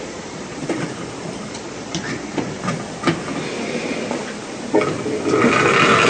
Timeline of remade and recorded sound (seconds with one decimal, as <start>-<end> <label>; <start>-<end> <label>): 0.0-0.6 remade; 0.6-1.5 recorded; 1.5-2.6 remade; 2.6-6.1 recorded